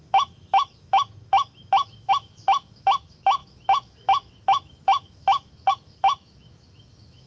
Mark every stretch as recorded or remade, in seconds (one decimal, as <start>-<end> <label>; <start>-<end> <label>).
0.0-7.3 remade